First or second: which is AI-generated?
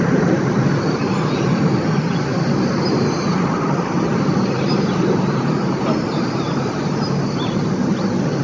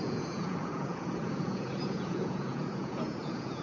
second